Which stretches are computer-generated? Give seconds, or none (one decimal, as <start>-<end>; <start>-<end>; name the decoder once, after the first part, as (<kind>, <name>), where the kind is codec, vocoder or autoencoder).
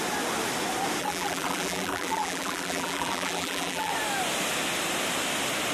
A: 1.0-3.9 (vocoder, BigVGAN v2)